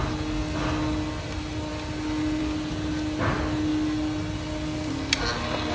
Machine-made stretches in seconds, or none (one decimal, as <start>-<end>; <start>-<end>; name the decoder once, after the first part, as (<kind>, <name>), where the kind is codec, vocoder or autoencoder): none